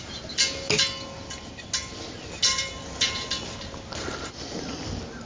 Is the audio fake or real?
real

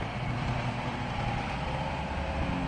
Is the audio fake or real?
fake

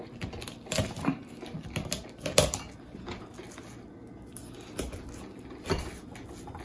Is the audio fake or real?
real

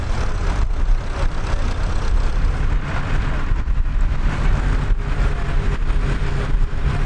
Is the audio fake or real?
real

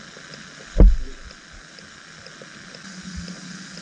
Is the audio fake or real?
real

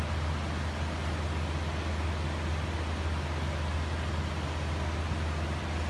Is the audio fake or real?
real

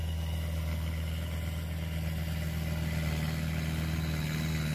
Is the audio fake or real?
real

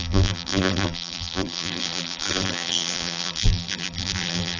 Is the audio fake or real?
fake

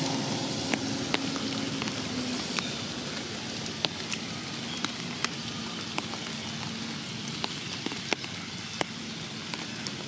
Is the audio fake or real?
real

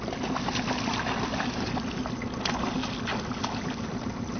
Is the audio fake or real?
real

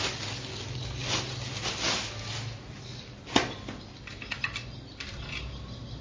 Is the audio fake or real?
real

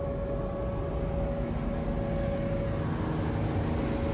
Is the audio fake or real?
real